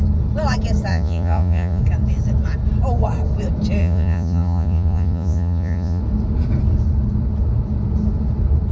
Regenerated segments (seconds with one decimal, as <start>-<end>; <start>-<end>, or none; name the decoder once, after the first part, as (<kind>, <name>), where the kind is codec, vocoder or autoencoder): 0.9-1.8 (vocoder, Vocos); 3.8-6.0